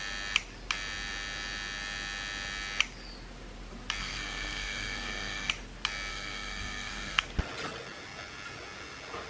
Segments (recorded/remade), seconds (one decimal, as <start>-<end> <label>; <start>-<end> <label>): 0.0-4.0 recorded; 4.0-5.5 remade; 5.5-6.1 recorded; 6.1-7.3 remade; 7.3-9.3 recorded